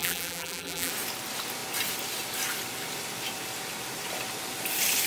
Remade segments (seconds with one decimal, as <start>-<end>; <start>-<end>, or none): 0.0-0.9